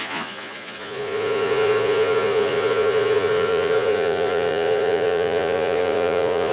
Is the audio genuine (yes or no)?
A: no